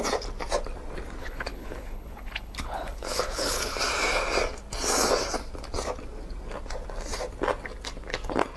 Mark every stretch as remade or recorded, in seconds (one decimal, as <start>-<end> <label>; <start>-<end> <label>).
0.0-1.2 recorded; 1.2-3.8 remade; 3.8-8.6 recorded